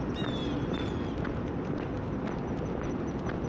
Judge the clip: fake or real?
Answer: real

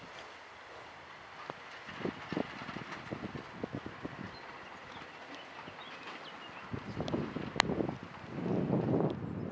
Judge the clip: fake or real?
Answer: real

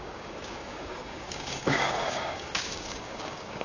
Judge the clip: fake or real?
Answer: fake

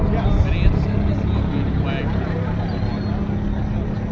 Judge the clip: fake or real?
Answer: real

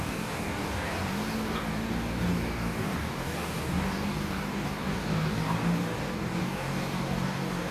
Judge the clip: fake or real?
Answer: fake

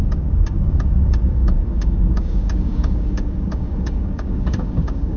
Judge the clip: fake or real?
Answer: fake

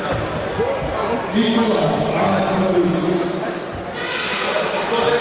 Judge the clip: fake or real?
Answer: real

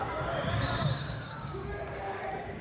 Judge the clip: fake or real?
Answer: fake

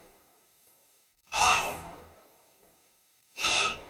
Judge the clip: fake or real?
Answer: fake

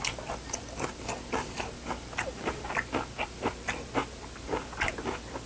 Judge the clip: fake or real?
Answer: real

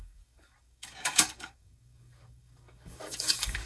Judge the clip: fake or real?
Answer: fake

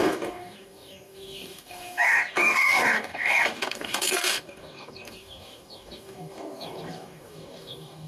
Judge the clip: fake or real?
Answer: fake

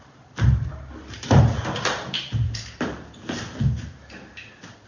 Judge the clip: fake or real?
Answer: real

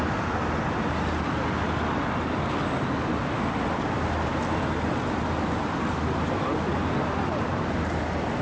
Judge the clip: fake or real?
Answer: real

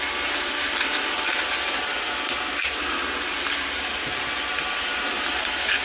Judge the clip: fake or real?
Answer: real